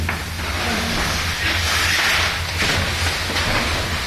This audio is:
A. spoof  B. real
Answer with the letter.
B